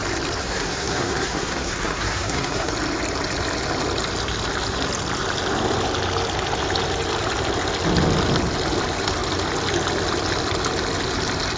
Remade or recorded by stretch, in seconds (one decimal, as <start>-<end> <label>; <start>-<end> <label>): 0.0-0.4 recorded; 0.4-2.7 remade; 2.7-11.6 recorded